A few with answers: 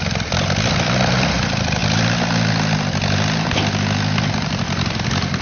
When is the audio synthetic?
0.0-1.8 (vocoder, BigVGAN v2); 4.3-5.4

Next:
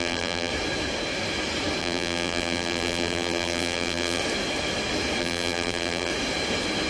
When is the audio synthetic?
0.0-0.5 (vocoder, BigVGAN v2); 1.8-4.2; 5.2-6.1

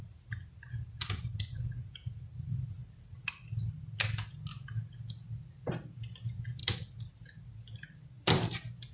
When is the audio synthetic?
0.0-8.9 (vocoder, BigVGAN v2)